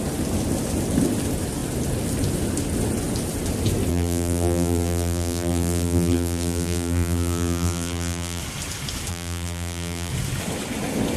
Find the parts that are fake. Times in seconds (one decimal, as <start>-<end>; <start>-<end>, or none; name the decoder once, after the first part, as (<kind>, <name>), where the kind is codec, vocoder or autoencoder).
3.9-8.4 (vocoder, BigVGAN v2); 9.1-10.1